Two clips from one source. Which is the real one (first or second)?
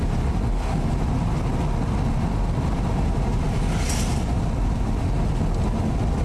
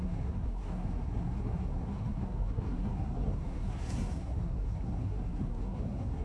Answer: first